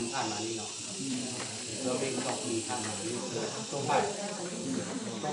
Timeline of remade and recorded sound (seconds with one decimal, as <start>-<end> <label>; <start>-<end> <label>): 0.0-0.8 recorded; 0.8-1.7 remade; 1.7-3.9 recorded; 3.9-5.3 remade